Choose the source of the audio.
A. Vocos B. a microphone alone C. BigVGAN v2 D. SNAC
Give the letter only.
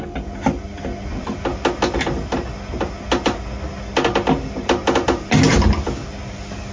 B